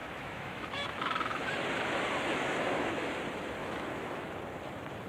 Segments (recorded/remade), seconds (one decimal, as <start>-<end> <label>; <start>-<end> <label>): 0.0-1.5 remade; 1.5-2.3 recorded; 2.3-3.1 remade; 3.1-3.6 recorded; 3.6-4.3 remade; 4.3-5.1 recorded